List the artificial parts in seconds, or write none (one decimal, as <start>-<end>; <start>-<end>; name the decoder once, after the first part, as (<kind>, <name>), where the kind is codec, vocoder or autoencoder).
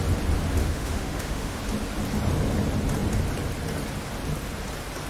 0.6-1.6 (autoencoder, DAC-VAE)